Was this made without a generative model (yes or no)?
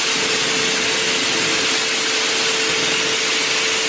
yes